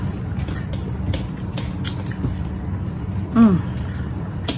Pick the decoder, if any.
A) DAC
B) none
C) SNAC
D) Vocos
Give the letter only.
B